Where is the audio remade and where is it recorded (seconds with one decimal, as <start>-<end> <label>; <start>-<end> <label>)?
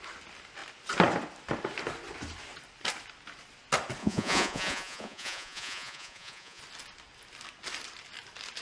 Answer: 0.0-4.0 recorded; 4.0-6.6 remade; 6.6-8.6 recorded